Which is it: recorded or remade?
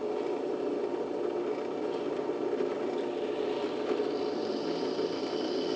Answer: recorded